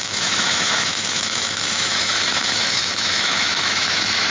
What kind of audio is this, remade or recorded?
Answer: remade